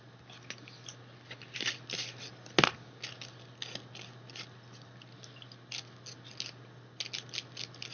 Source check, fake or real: real